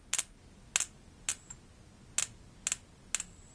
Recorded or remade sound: recorded